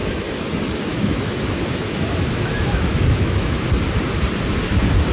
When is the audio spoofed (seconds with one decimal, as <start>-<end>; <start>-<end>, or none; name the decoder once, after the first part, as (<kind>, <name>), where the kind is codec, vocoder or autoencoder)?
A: 0.0-0.5 (autoencoder, DAC-VAE); 0.9-3.7